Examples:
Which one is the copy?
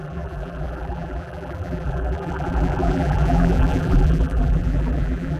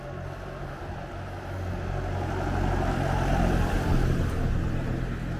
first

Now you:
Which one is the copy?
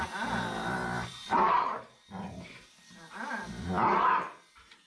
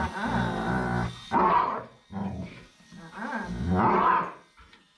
first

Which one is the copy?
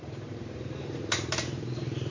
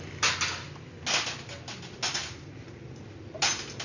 first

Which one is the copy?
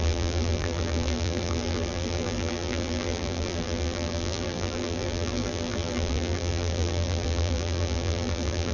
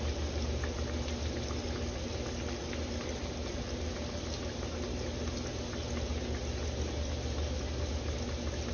first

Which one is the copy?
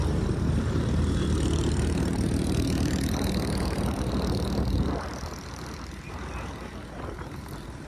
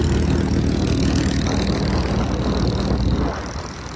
first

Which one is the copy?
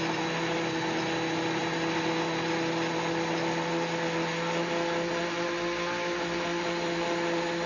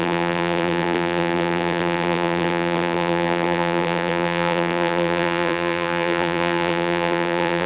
second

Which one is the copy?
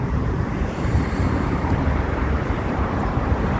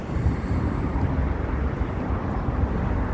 first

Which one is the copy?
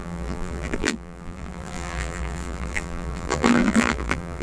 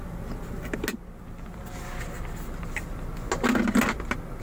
first